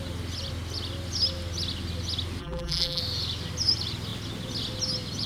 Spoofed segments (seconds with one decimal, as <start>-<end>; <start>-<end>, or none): 2.4-3.0